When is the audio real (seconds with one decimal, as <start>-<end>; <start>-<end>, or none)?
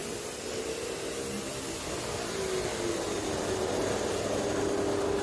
0.0-5.2